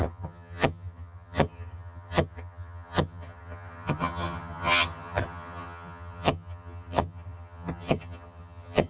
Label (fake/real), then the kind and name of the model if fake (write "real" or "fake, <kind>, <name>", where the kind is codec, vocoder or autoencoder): fake, vocoder, HiFi-GAN